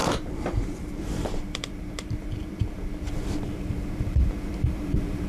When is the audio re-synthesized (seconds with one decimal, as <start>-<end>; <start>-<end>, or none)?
0.0-5.3